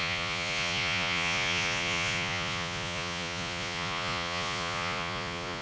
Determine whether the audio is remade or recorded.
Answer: remade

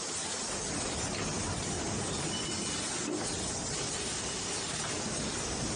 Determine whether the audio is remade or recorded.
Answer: recorded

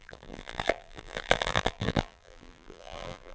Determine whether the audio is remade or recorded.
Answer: remade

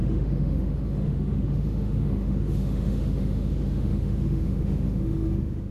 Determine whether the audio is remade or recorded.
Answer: remade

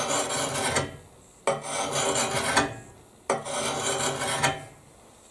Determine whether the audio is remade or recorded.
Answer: recorded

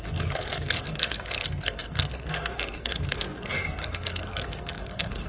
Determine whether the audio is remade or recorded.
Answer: remade